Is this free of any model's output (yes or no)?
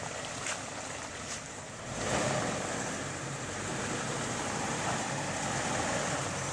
no